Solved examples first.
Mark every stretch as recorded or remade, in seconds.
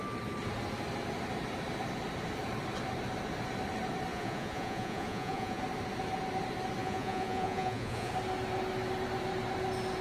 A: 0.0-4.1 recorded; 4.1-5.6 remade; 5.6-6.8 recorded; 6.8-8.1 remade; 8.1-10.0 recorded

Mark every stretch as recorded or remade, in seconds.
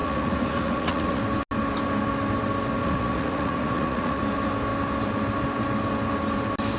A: 0.0-1.2 remade; 1.2-2.8 recorded; 2.8-4.2 remade; 4.2-6.8 recorded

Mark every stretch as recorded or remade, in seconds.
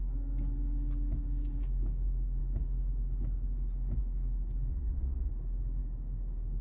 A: 0.0-4.7 recorded; 4.7-5.3 remade; 5.3-6.6 recorded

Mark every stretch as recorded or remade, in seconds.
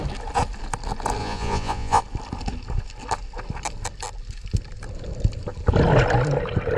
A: 0.0-1.2 recorded; 1.2-2.0 remade; 2.0-6.8 recorded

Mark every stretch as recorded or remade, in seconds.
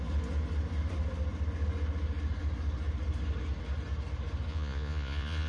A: 0.0-4.5 recorded; 4.5-5.5 remade